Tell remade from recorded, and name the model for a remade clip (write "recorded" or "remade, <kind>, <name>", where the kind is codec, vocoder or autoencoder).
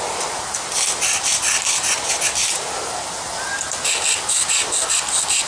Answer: recorded